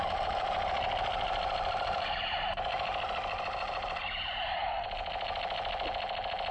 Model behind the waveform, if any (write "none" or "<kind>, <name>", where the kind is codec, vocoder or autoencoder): none